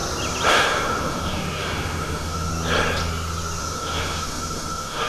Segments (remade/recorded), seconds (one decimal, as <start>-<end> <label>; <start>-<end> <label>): 0.0-0.5 recorded; 0.5-2.5 remade; 2.5-3.6 recorded; 3.6-5.1 remade